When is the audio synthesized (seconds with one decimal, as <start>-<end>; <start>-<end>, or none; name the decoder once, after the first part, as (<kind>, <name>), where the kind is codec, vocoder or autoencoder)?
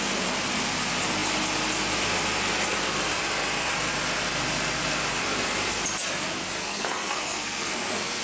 6.6-8.2 (codec, SNAC)